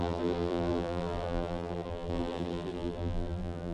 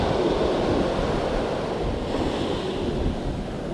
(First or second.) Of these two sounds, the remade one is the first